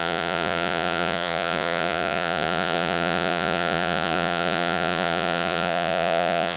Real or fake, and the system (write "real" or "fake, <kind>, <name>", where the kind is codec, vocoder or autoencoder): fake, vocoder, Vocos